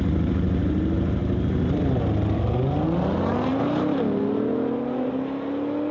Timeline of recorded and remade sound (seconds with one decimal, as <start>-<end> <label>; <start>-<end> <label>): 0.0-1.2 recorded; 1.2-2.0 remade; 2.0-5.9 recorded